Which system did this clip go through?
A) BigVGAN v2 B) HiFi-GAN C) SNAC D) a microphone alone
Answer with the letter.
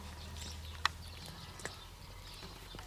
D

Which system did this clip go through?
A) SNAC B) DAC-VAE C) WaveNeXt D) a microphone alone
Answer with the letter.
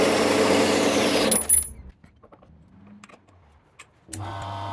D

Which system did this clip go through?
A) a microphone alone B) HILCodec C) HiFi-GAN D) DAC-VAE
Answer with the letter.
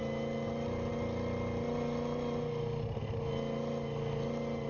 A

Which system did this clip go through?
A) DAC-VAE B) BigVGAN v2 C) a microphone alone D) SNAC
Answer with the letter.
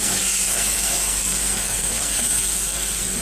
D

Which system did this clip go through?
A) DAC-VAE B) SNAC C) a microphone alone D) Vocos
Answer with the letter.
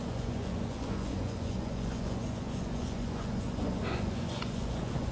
D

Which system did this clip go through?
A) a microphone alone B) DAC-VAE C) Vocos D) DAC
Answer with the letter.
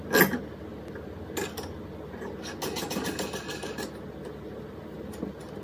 A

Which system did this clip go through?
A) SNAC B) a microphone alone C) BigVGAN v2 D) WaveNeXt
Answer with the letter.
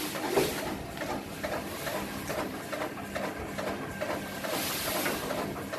B